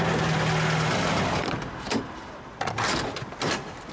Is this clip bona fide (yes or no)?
yes